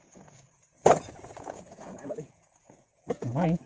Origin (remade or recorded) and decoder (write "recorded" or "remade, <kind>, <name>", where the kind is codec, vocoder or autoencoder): remade, vocoder, Vocos